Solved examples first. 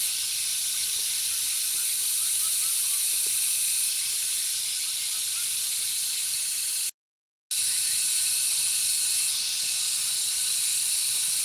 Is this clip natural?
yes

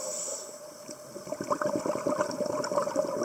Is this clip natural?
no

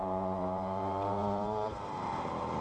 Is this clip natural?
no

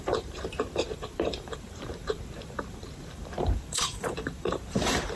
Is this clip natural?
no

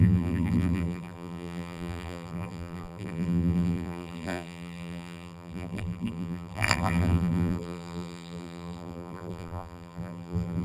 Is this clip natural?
no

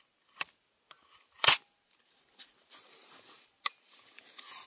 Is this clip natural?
no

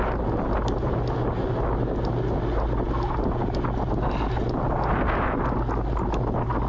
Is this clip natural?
yes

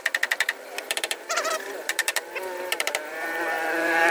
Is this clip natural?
no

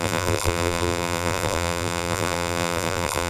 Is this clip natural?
no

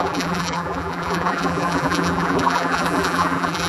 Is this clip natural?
no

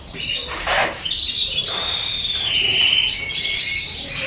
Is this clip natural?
no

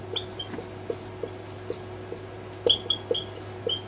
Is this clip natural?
yes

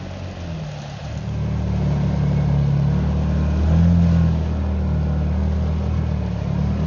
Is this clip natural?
yes